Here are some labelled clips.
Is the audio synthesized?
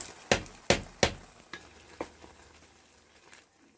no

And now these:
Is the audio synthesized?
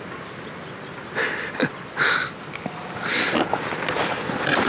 no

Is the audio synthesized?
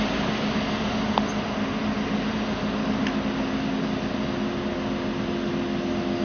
no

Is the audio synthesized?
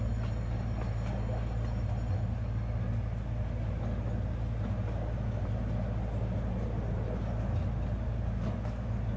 no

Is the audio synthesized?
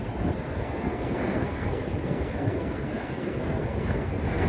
yes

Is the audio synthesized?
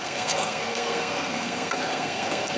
yes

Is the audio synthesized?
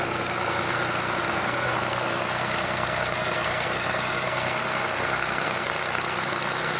yes